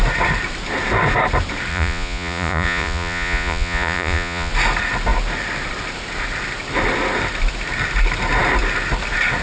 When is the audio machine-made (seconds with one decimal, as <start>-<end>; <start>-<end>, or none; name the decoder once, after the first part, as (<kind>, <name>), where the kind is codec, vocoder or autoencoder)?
1.7-4.5 (vocoder, Vocos)